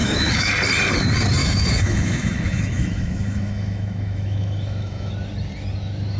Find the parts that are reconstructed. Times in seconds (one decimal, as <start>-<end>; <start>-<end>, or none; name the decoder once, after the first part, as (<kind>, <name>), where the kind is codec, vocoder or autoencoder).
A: 0.0-0.5 (autoencoder, DAC-VAE); 1.4-5.1